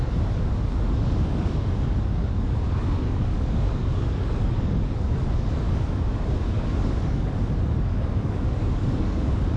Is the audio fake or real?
fake